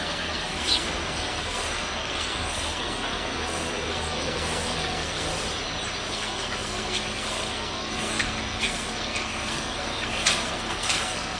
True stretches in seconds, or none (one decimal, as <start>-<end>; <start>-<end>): 5.3-6.1

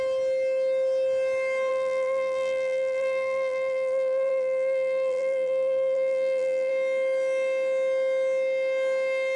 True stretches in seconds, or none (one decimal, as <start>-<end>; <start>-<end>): 0.0-1.7; 6.7-9.4

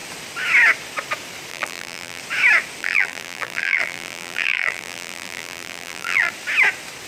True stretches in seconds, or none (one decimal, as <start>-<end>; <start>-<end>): 0.0-1.5; 2.2-2.8; 6.3-7.1

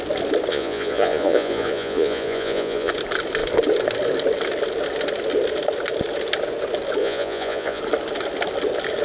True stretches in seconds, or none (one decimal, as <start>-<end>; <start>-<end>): 0.0-0.5; 2.9-7.0; 7.8-9.0

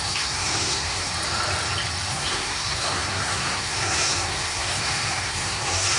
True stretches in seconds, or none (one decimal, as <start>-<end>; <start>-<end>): 1.1-2.1

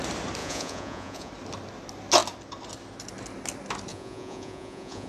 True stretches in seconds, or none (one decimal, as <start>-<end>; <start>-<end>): 0.0-0.4; 1.3-3.9

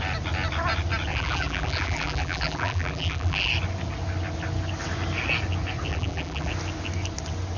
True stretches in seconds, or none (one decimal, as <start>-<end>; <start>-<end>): 0.0-1.1; 3.5-5.9; 6.5-7.6